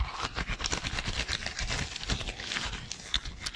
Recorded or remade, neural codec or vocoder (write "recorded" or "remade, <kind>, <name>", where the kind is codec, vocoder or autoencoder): recorded